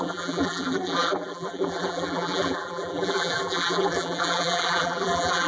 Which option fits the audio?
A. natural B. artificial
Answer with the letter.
B